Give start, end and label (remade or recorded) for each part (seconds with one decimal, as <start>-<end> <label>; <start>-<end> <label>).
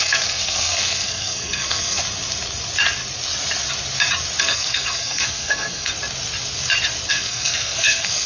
0.0-2.0 remade; 2.0-4.4 recorded; 4.4-5.9 remade; 5.9-7.1 recorded; 7.1-8.3 remade